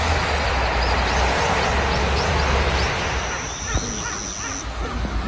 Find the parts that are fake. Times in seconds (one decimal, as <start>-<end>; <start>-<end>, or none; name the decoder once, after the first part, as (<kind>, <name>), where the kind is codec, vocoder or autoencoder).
0.5-3.7 (vocoder, BigVGAN v2)